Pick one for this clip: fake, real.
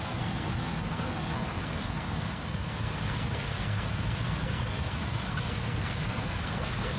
fake